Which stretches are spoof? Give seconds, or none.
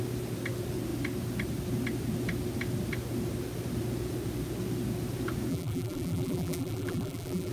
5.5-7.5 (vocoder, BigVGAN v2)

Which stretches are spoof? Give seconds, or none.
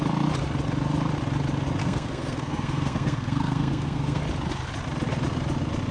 1.8-4.2 (codec, SNAC)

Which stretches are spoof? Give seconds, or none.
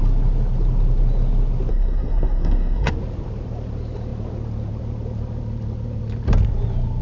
1.7-2.9 (codec, SNAC)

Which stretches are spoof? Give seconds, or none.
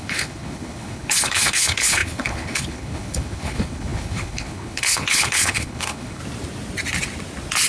0.0-6.2 (codec, HILCodec)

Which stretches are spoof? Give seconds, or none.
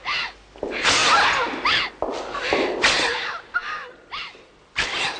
none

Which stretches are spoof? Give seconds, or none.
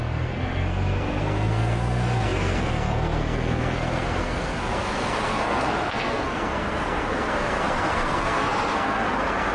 0.0-9.5 (codec, SNAC)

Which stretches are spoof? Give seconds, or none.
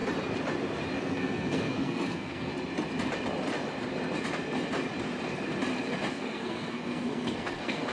1.0-2.5 (codec, SNAC); 6.1-7.9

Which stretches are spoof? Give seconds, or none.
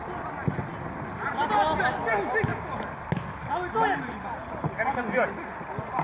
none